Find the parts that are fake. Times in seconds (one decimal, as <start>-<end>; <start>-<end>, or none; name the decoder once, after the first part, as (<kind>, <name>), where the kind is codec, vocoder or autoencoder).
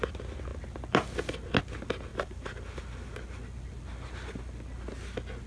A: 2.1-2.8 (vocoder, BigVGAN v2)